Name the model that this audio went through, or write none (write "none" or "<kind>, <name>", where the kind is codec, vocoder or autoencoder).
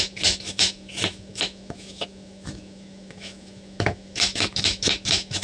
autoencoder, DAC-VAE